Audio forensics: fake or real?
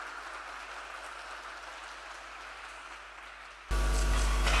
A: real